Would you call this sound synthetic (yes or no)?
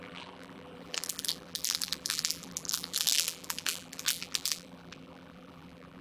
yes